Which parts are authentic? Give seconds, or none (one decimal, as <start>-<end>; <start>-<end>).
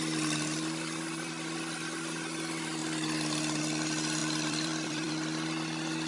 0.0-4.2; 5.1-6.1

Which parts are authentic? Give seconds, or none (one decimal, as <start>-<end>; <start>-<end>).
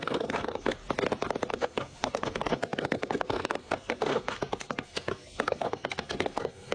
0.8-1.5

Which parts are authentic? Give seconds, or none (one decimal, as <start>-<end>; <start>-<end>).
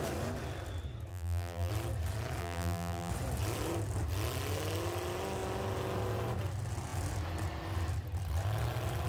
0.0-1.1; 1.7-2.4; 3.1-9.1